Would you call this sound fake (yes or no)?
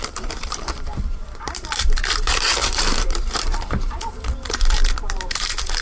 yes